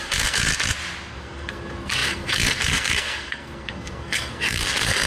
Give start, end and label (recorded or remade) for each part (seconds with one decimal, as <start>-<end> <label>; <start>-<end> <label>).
0.0-0.5 remade; 0.5-1.1 recorded; 1.1-5.1 remade